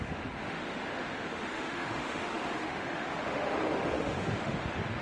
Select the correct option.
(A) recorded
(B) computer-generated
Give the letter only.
B